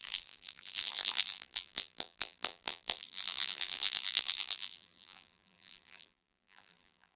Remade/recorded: remade